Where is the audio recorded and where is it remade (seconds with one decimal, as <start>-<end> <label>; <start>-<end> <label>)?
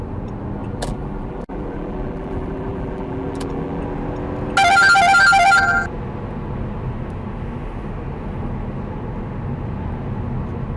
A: 0.0-0.6 recorded; 0.6-3.8 remade; 3.8-10.8 recorded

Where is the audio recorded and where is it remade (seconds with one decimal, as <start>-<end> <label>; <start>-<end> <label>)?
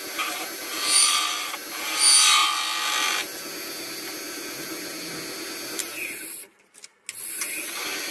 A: 0.0-8.1 recorded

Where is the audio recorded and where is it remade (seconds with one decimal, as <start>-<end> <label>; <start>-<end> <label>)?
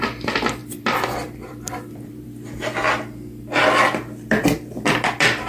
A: 0.0-0.6 recorded; 0.6-2.3 remade; 2.3-5.5 recorded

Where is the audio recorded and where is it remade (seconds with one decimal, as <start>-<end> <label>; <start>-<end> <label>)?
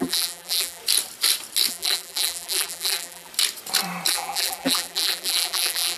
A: 0.0-0.8 remade; 0.8-1.7 recorded; 1.7-3.3 remade; 3.3-4.1 recorded; 4.1-6.0 remade